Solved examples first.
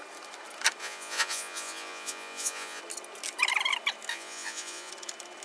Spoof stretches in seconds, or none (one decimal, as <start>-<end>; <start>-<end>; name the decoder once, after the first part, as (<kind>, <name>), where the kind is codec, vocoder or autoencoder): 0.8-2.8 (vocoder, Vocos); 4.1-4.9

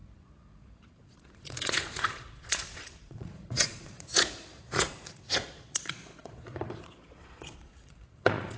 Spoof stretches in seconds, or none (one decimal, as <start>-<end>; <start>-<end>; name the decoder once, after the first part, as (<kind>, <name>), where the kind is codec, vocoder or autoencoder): 0.0-8.6 (vocoder, Vocos)

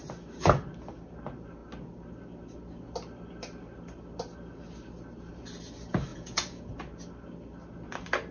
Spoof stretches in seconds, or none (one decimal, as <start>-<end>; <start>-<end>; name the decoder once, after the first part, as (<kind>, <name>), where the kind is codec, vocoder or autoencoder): 6.1-6.7 (vocoder, Vocos)

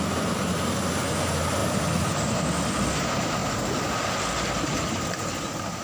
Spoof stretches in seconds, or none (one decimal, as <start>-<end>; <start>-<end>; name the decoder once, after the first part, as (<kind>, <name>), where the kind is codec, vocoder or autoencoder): none

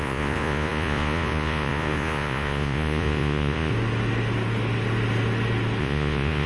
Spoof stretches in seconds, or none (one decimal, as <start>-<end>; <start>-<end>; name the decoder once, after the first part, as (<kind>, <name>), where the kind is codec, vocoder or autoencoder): 0.0-3.7 (vocoder, Vocos); 5.8-6.5

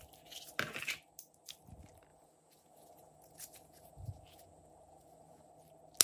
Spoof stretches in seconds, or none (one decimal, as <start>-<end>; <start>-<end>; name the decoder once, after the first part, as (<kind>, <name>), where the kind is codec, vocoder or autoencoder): 2.1-5.5 (vocoder, Vocos)